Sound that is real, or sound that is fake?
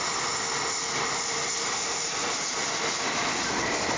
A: real